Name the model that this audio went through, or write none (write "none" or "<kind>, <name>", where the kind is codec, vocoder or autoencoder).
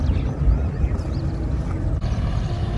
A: none